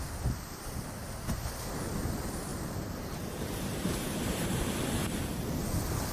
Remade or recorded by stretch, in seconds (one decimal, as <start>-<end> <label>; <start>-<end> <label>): 0.0-2.5 recorded; 2.5-4.6 remade; 4.6-5.0 recorded; 5.0-6.1 remade